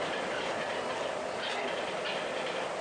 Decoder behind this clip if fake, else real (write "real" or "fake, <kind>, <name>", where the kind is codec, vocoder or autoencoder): real